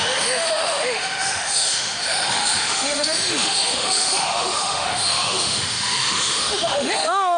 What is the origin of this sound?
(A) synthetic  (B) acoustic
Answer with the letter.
A